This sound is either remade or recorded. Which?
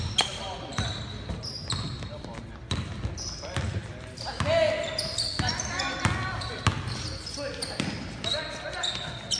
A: recorded